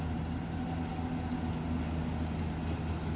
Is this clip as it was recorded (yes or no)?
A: yes